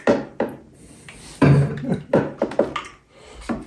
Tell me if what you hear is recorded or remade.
recorded